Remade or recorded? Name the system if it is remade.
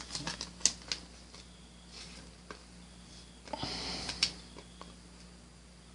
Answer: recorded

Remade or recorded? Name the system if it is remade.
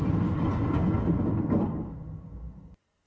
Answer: recorded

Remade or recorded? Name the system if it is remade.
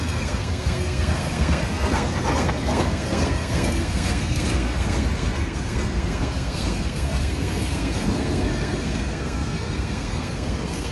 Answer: remade, codec, SNAC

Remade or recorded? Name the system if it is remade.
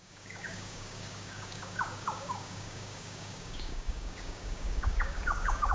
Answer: remade, codec, DAC